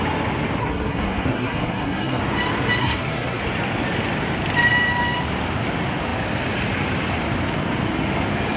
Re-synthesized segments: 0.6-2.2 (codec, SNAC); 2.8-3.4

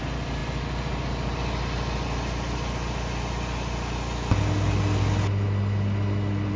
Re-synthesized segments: none

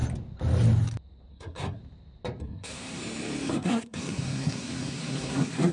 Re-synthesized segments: 1.3-1.8 (codec, SNAC); 2.4-3.0; 3.5-5.7

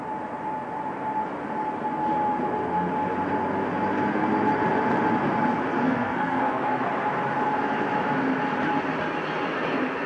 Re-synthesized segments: 5.7-6.8 (codec, SNAC)

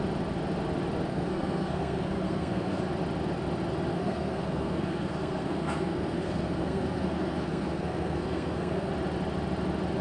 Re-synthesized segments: 1.1-2.8 (codec, SNAC); 3.9-8.9